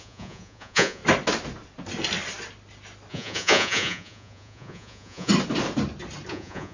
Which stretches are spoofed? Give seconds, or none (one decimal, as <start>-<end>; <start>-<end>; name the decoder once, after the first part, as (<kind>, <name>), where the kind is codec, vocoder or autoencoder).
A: 0.0-1.0 (vocoder, Vocos); 3.1-5.3; 6.3-6.7